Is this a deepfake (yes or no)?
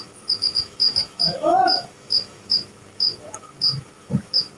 yes